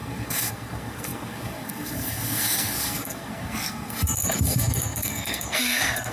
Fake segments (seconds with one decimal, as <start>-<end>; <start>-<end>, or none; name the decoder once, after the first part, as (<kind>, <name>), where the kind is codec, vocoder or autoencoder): 0.0-6.1 (codec, SNAC)